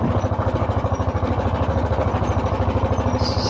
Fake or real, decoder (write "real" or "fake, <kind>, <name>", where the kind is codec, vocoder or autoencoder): real